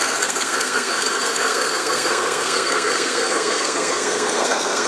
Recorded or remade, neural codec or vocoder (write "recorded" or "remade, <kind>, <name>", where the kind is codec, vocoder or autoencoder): remade, codec, SNAC